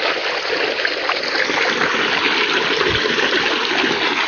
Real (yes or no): yes